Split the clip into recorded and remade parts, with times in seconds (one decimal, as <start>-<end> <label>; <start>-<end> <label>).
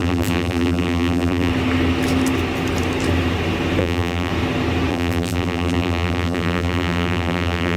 0.0-1.5 remade; 1.5-3.8 recorded; 3.8-4.3 remade; 4.3-4.9 recorded; 4.9-7.8 remade